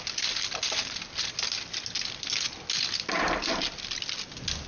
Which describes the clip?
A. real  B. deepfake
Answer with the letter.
A